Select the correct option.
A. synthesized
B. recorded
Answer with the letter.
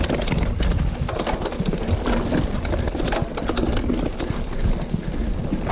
B